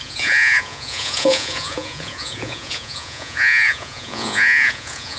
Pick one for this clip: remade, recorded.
remade